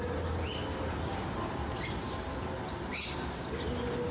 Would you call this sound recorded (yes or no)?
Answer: yes